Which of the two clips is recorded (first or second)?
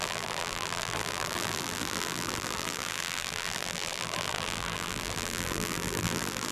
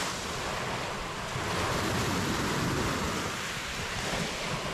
second